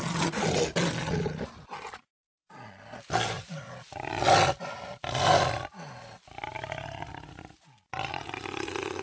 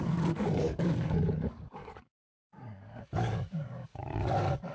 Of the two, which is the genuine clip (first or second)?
first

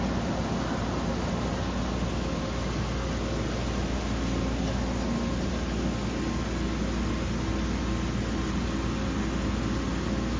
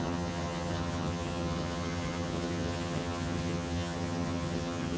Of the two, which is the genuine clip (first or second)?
first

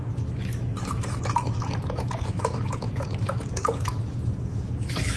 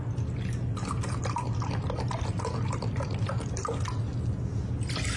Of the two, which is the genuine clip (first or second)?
second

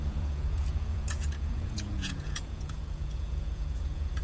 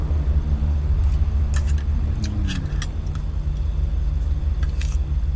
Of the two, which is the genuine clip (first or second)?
second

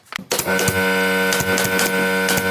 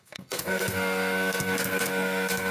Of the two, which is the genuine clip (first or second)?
first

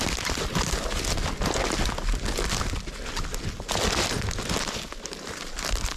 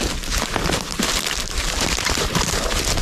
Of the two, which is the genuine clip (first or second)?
first